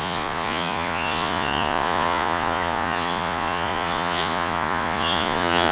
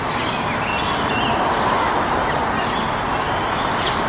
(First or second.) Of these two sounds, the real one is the second